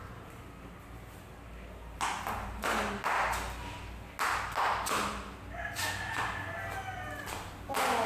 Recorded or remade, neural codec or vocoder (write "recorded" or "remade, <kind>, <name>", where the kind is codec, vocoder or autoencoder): recorded